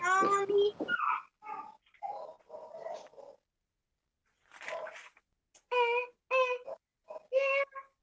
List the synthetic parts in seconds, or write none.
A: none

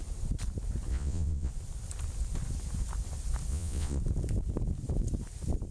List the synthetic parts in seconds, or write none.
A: 0.9-1.5 (vocoder, Vocos); 3.5-4.0

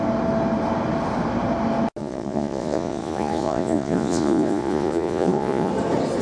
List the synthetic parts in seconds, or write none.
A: 2.0-5.7 (vocoder, Vocos)

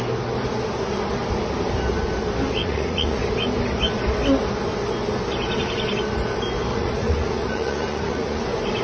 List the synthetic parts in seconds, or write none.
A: 2.6-3.2 (vocoder, Vocos); 6.7-8.4

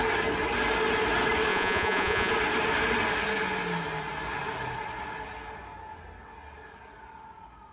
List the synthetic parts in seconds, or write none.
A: 1.5-2.3 (vocoder, Vocos)

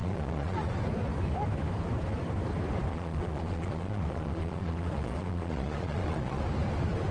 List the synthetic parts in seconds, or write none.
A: 0.0-0.7 (vocoder, Vocos); 2.9-6.4

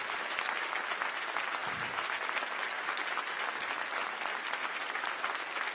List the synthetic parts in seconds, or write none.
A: none